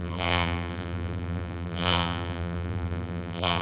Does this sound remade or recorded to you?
remade